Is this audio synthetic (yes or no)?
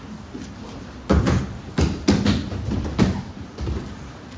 no